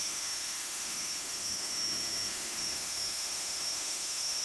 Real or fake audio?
fake